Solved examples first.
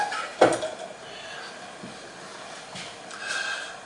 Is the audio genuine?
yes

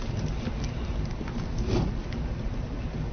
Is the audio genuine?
no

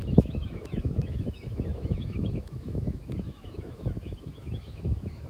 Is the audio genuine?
no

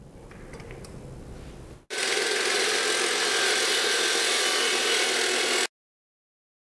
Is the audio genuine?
yes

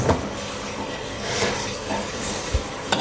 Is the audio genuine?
no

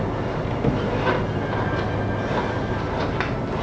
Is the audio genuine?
yes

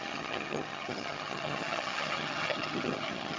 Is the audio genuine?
no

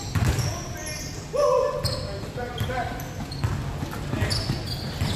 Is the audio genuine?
yes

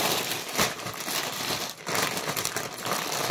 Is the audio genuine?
no